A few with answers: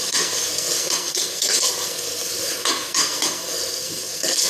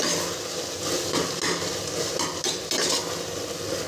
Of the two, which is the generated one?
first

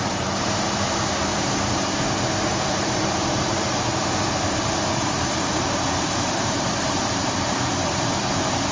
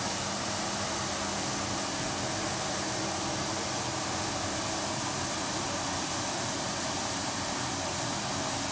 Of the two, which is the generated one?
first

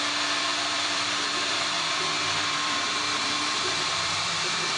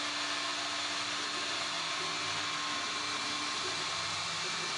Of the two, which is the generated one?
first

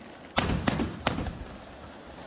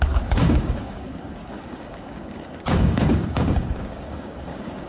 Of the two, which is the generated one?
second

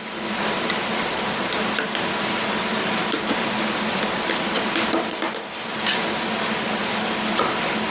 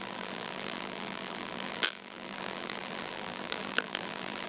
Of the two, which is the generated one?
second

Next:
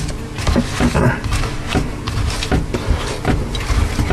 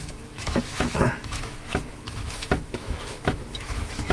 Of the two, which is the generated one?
second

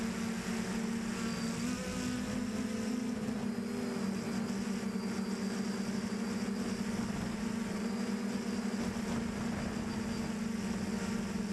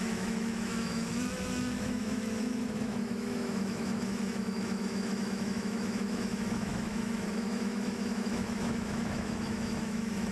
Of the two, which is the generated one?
second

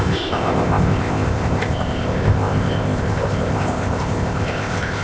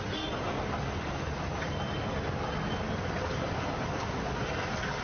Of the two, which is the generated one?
first